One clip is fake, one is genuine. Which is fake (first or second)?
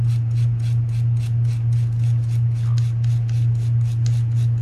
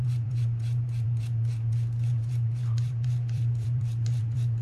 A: second